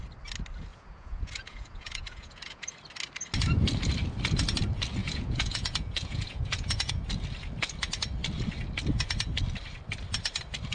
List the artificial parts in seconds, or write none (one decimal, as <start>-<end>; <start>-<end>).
0.7-2.7; 5.0-6.9